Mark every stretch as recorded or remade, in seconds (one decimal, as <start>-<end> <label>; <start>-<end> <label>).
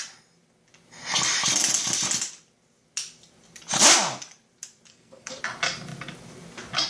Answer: 0.0-4.9 recorded; 4.9-5.4 remade; 5.4-6.9 recorded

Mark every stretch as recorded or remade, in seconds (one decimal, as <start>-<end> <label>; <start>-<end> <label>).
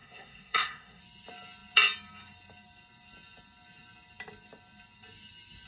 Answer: 0.0-1.0 remade; 1.0-5.7 recorded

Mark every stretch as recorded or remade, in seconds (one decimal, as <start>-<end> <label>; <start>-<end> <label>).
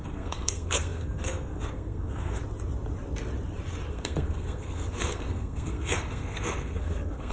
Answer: 0.0-2.4 remade; 2.4-3.9 recorded; 3.9-7.3 remade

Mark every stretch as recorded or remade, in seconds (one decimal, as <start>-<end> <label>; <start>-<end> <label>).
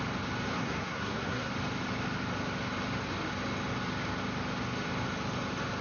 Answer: 0.0-0.5 recorded; 0.5-1.5 remade; 1.5-5.8 recorded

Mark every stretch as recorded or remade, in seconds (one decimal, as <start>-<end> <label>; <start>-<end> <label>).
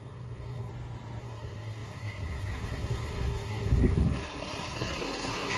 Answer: 0.0-0.7 remade; 0.7-1.2 recorded; 1.2-5.6 remade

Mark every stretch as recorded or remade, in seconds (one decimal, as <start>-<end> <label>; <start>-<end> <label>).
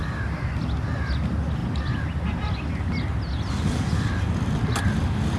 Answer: 0.0-5.4 recorded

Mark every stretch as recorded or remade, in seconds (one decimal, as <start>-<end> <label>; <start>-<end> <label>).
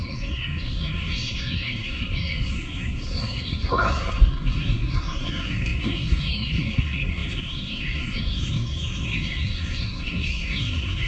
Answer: 0.0-11.1 remade